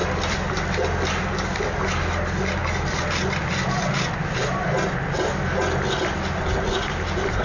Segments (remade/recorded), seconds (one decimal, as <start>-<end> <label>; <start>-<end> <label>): 0.0-7.4 recorded